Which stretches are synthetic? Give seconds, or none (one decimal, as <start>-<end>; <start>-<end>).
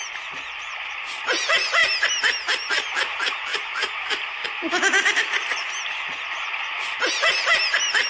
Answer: none